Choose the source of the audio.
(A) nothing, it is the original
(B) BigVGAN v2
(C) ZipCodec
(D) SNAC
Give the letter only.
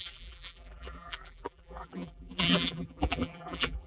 B